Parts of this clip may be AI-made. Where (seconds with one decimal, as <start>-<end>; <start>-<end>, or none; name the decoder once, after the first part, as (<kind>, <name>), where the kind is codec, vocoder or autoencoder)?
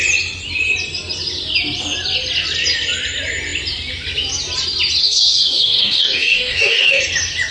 5.0-7.0 (codec, DAC)